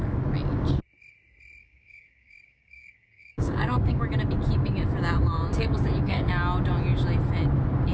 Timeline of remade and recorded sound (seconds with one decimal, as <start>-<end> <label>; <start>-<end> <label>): 0.0-1.6 recorded; 1.6-4.0 remade; 4.0-5.5 recorded; 5.5-6.3 remade; 6.3-7.9 recorded